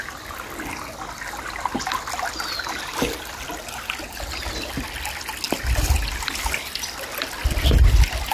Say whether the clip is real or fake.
real